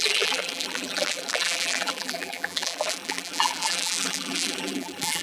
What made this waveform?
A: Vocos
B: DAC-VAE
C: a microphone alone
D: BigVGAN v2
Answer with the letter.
D